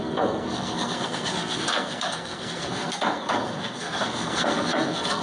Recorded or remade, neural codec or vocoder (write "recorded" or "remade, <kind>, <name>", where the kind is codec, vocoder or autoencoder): remade, codec, SNAC